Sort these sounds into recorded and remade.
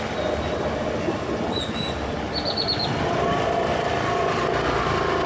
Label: recorded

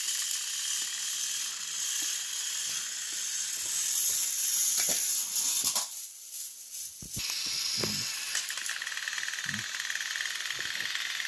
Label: recorded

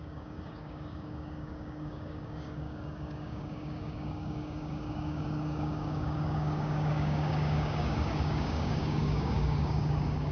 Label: remade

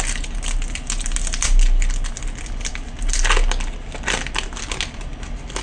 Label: recorded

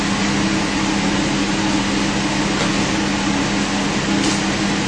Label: recorded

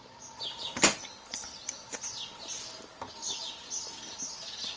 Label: recorded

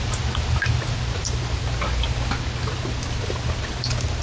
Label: recorded